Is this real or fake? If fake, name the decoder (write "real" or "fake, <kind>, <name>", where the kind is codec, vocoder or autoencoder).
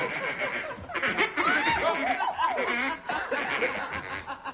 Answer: real